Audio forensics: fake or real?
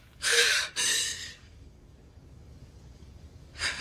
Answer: fake